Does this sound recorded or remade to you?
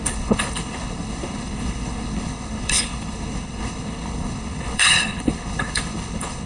remade